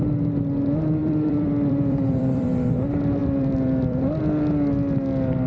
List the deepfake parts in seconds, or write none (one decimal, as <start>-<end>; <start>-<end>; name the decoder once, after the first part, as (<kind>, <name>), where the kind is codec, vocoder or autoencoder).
1.0-2.5 (vocoder, BigVGAN v2); 3.2-4.2